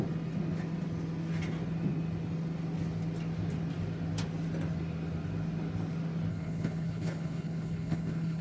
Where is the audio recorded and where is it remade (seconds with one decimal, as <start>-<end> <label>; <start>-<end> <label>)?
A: 0.0-6.3 recorded; 6.3-8.4 remade